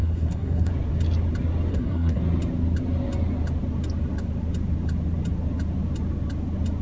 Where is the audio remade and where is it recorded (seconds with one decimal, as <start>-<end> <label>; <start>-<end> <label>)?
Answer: 0.0-0.7 remade; 0.7-1.7 recorded; 1.7-2.2 remade; 2.2-6.8 recorded